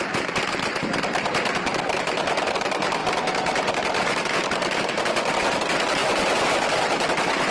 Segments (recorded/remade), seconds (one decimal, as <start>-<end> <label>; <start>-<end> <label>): 0.0-7.5 recorded

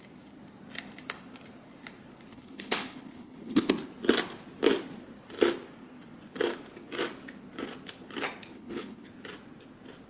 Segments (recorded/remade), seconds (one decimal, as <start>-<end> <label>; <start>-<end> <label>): 0.0-2.3 recorded; 2.3-3.7 remade; 3.7-8.5 recorded; 8.5-9.1 remade; 9.1-10.1 recorded

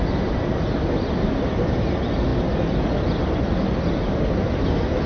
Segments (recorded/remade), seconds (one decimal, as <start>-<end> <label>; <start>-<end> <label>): 0.0-5.1 recorded

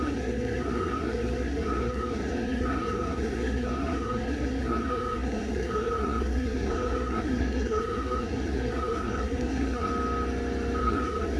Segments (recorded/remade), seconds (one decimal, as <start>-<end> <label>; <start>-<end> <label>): 0.0-9.9 remade; 9.9-10.8 recorded; 10.8-11.4 remade

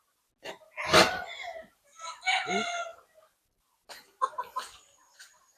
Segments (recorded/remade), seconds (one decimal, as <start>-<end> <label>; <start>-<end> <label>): 0.0-1.6 recorded; 1.6-2.4 remade; 2.4-5.6 recorded

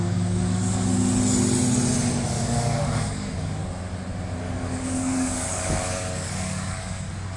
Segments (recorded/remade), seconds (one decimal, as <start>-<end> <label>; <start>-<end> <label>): 0.0-0.9 remade; 0.9-2.3 recorded; 2.3-3.6 remade; 3.6-4.4 recorded; 4.4-7.4 remade